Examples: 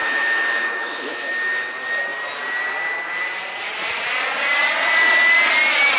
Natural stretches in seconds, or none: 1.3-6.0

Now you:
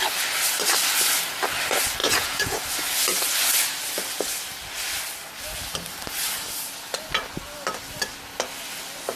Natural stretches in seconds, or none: 0.0-2.0; 2.6-9.2

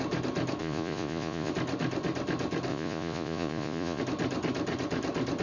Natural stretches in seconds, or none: 0.0-0.6; 1.5-2.7; 4.0-5.4

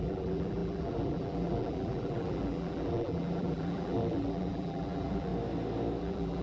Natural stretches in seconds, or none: 5.3-6.0